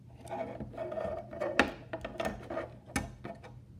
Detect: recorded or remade recorded